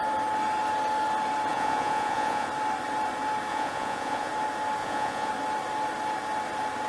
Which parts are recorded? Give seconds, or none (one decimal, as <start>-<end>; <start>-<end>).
0.0-1.5; 2.5-3.5; 4.3-4.8; 5.3-6.9